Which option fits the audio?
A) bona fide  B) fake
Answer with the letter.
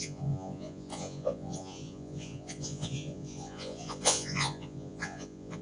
B